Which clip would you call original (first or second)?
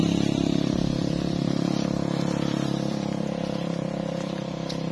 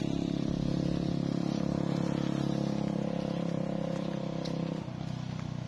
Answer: second